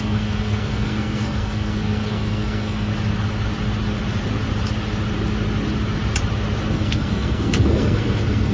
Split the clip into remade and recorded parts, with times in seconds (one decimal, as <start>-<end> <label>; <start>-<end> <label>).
0.0-2.9 remade; 2.9-6.7 recorded; 6.7-8.5 remade